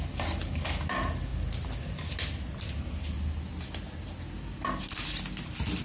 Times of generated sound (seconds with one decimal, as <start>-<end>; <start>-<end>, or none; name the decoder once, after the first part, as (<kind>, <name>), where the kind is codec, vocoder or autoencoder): none